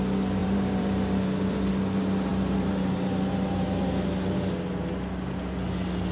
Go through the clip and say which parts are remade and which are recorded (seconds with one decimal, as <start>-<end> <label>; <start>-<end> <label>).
0.0-0.4 recorded; 0.4-1.7 remade; 1.7-2.3 recorded; 2.3-4.1 remade; 4.1-6.1 recorded